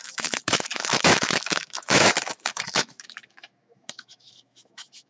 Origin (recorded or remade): remade